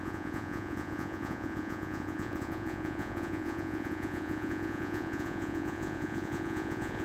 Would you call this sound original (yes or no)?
no